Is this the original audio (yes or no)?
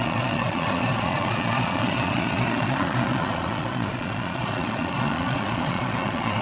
no